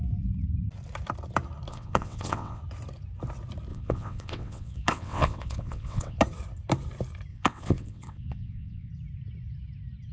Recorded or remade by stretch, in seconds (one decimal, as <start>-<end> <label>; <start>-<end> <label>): 0.0-1.7 recorded; 1.7-2.6 remade; 2.6-3.7 recorded; 3.7-6.2 remade; 6.2-7.3 recorded; 7.3-8.9 remade; 8.9-10.1 recorded